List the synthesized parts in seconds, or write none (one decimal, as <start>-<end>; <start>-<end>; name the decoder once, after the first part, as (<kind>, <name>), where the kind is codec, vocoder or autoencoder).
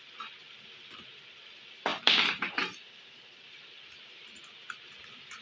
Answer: 1.9-5.4 (vocoder, BigVGAN v2)